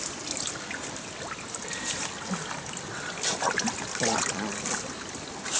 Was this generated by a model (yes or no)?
no